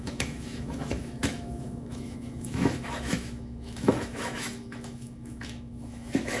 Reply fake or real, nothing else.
fake